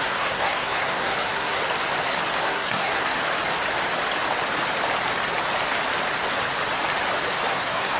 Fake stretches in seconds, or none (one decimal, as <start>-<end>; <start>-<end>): 0.0-1.6; 2.4-3.2; 7.5-8.0